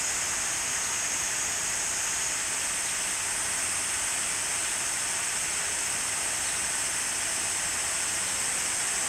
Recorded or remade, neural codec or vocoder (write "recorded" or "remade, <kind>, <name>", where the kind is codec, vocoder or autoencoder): recorded